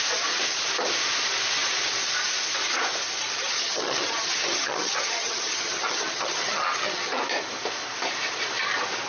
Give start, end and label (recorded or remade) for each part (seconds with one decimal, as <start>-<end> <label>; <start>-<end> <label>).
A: 0.0-3.4 recorded; 3.4-7.2 remade; 7.2-9.1 recorded